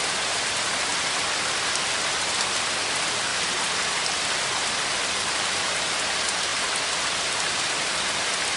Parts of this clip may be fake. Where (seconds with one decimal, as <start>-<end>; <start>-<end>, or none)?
0.0-0.9; 2.8-3.3; 5.2-6.5; 7.2-8.6